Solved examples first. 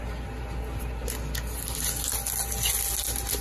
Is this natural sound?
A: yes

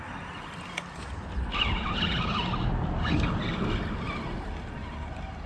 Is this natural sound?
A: yes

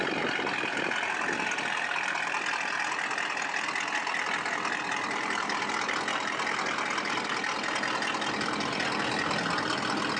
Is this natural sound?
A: yes